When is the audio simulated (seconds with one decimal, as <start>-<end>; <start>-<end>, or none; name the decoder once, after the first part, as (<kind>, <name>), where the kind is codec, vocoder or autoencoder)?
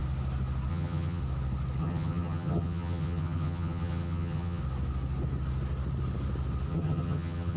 0.7-1.2 (vocoder, HiFi-GAN); 1.8-4.6; 6.7-7.6